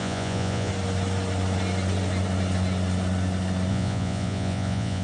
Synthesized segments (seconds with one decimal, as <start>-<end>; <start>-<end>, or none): 0.0-0.7; 3.7-5.0